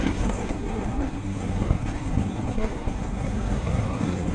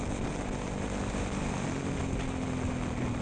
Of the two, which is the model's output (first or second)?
first